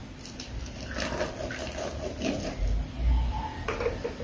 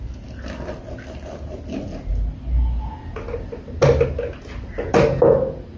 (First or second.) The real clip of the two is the second